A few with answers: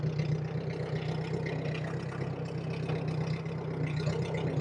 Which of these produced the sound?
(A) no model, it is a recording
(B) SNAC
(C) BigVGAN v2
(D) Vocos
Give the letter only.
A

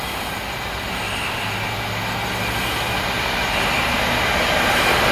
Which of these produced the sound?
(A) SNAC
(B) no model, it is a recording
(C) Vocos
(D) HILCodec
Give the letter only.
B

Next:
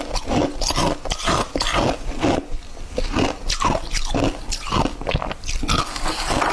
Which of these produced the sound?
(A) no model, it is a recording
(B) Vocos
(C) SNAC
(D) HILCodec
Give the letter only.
A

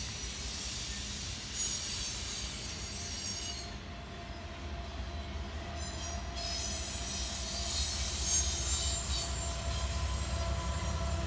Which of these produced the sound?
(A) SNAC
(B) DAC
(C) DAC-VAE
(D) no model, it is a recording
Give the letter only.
D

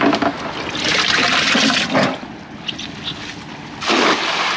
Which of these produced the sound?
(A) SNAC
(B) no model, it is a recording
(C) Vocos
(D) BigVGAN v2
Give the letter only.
B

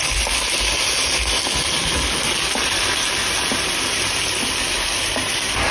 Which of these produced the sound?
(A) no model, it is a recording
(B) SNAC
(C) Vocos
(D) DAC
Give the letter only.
A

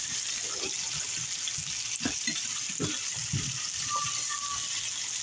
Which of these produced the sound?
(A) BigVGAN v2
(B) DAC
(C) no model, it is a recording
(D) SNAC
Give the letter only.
C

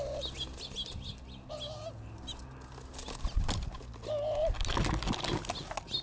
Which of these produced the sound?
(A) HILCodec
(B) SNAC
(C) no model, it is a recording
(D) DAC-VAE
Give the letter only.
C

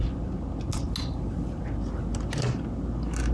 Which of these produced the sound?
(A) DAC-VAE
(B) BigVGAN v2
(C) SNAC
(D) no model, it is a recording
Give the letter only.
D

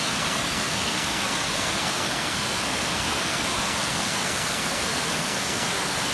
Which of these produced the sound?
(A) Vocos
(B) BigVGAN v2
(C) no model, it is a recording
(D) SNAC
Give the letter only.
D